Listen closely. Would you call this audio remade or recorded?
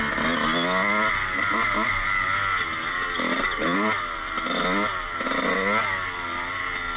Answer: recorded